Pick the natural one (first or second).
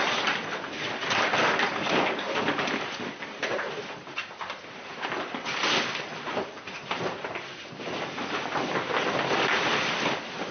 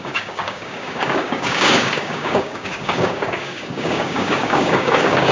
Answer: first